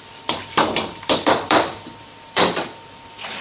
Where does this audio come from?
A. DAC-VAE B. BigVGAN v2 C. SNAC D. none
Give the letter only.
B